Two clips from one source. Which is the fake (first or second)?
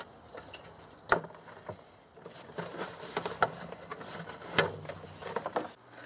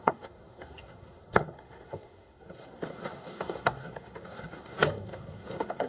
second